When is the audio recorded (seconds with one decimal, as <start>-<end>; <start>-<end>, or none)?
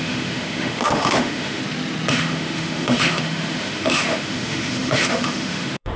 1.6-2.1